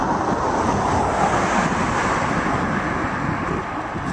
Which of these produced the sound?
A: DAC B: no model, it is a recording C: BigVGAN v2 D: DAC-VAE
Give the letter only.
B